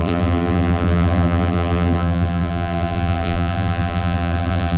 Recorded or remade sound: remade